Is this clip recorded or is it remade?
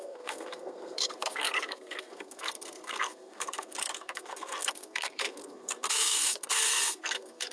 remade